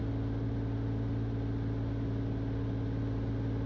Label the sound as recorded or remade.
recorded